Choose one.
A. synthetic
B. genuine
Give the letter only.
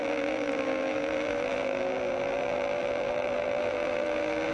A